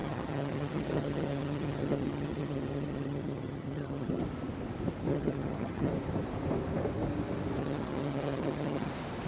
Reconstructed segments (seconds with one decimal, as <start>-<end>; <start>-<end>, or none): 0.0-4.2; 5.1-5.9; 7.6-8.9